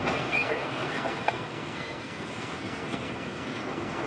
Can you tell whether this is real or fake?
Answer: fake